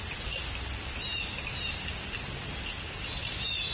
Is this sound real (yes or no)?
yes